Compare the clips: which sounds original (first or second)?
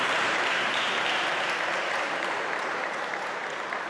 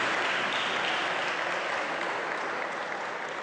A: second